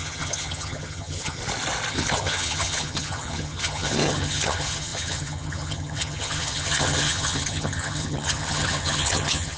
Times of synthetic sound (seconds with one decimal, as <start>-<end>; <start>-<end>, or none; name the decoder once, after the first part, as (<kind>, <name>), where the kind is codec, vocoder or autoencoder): 0.0-1.4 (vocoder, HiFi-GAN); 1.9-9.6